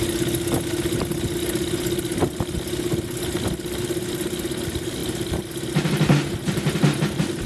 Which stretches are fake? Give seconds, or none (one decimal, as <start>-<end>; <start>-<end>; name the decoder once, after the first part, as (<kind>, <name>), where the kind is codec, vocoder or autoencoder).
none

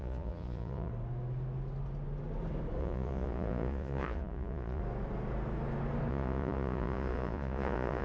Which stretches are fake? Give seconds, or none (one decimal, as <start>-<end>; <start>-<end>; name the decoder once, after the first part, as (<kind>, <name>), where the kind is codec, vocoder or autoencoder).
0.0-0.9 (vocoder, Vocos); 2.8-4.8; 6.1-8.0